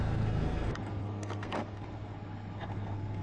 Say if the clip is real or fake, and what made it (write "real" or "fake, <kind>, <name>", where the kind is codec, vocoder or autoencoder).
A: fake, codec, SNAC